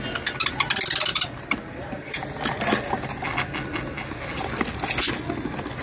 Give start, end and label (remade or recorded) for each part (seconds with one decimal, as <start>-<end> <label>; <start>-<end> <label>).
0.0-1.1 recorded; 1.1-2.6 remade; 2.6-5.8 recorded